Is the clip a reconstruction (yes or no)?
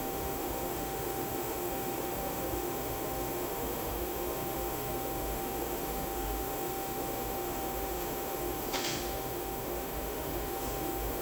yes